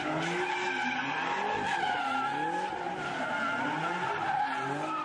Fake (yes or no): no